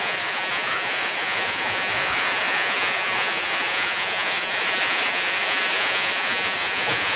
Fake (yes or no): yes